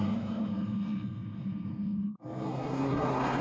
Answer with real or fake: fake